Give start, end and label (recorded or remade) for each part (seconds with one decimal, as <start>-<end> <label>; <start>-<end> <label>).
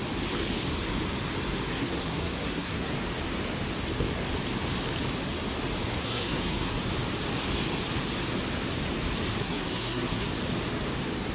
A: 0.0-1.7 recorded; 1.7-2.9 remade; 2.9-6.0 recorded; 6.0-6.7 remade; 6.7-9.3 recorded; 9.3-10.3 remade; 10.3-11.3 recorded